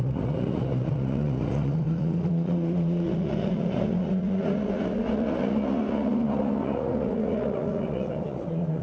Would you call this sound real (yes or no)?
no